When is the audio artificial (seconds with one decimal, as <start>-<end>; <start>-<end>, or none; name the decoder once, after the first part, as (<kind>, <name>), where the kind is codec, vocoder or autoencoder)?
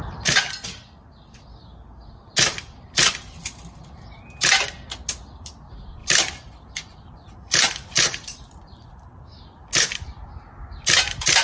6.0-9.2 (vocoder, BigVGAN v2)